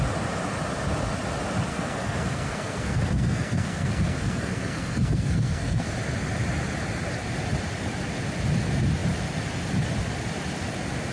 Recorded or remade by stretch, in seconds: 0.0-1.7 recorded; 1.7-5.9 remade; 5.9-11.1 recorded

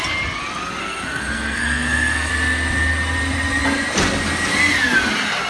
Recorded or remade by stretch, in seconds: 0.0-0.8 recorded; 0.8-2.3 remade; 2.3-5.5 recorded

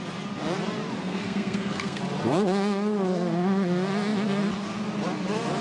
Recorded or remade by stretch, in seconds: 0.0-1.0 recorded; 1.0-2.0 remade; 2.0-5.6 recorded

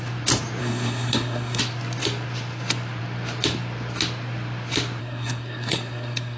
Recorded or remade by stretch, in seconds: 0.0-0.6 recorded; 0.6-1.6 remade; 1.6-5.0 recorded; 5.0-6.4 remade

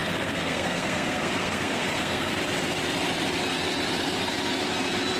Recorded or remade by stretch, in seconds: 0.0-2.3 remade; 2.3-5.2 recorded